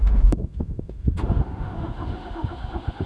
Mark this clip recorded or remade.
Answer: remade